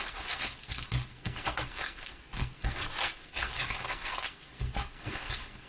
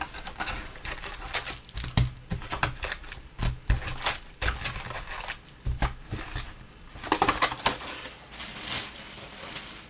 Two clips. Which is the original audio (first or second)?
second